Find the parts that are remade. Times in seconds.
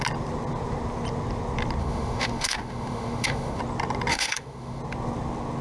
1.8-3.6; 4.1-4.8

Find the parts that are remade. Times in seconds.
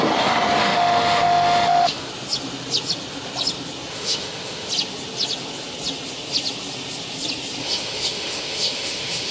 0.6-2.1; 3.9-4.7; 7.6-9.3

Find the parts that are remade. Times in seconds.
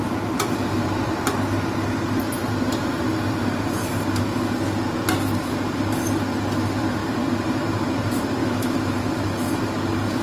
8.4-9.5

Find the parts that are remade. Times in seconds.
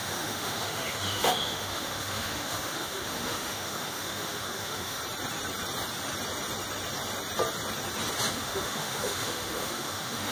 0.0-5.0; 8.3-10.3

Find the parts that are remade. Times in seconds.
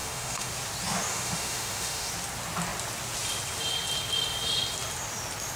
0.0-0.5; 1.1-2.1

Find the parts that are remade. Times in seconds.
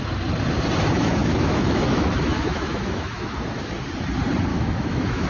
1.0-3.7; 4.5-5.3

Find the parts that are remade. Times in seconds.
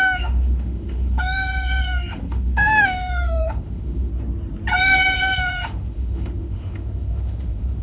0.0-4.1; 4.8-7.8